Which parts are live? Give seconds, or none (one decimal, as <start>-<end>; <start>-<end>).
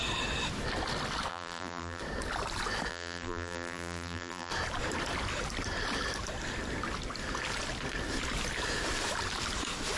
0.0-1.3; 2.0-2.9; 4.5-10.0